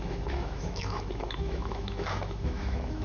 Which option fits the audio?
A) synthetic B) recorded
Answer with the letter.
A